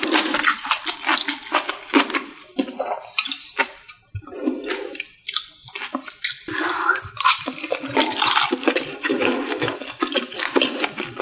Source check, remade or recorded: remade